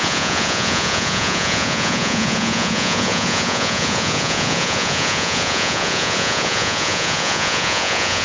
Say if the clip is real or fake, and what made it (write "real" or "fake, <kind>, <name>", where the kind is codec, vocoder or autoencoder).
fake, vocoder, Vocos